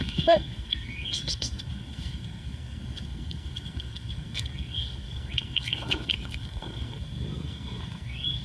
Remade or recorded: remade